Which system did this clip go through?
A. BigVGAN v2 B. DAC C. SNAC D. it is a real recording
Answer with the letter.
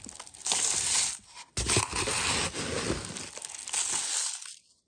D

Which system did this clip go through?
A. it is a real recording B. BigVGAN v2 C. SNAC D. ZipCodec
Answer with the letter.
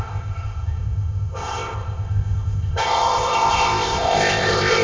D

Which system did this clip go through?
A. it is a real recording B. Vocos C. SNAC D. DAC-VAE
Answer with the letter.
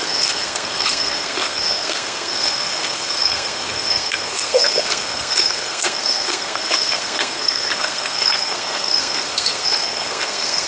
C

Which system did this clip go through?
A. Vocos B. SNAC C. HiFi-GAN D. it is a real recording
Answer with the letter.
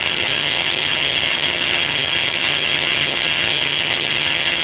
C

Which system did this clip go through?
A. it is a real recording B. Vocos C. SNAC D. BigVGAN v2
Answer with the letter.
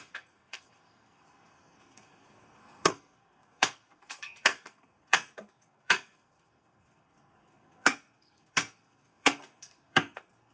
C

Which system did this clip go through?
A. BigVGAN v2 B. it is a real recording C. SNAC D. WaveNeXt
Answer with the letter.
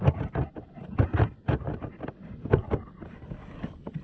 B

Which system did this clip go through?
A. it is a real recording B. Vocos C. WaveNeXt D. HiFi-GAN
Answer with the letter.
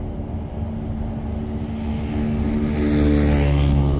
A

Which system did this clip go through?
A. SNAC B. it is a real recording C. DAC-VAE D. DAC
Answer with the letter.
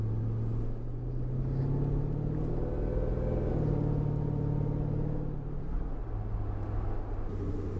B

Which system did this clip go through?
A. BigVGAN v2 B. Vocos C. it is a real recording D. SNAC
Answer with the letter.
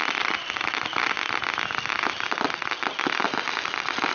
C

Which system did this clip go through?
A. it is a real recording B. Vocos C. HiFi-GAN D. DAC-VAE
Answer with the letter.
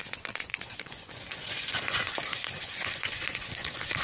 B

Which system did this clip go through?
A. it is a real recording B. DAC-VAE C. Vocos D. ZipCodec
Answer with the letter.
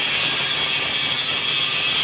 A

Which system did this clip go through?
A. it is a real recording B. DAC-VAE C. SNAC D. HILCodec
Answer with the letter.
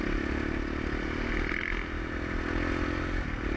A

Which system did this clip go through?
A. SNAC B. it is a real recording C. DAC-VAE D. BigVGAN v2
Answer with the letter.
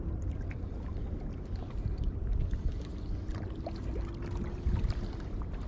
B